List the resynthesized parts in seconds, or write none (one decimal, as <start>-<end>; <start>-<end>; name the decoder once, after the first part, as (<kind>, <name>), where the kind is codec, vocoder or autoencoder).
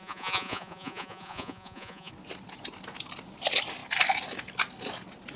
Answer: 0.0-2.1 (vocoder, Vocos)